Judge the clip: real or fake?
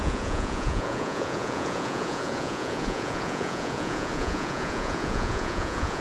fake